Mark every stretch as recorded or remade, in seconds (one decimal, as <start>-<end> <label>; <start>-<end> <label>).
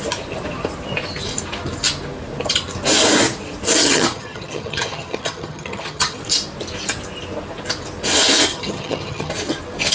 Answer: 0.0-3.8 recorded; 3.8-6.2 remade; 6.2-8.5 recorded; 8.5-9.3 remade; 9.3-9.9 recorded